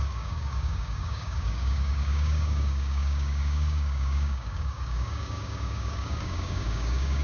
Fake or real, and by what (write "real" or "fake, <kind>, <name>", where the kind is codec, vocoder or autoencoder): fake, codec, DAC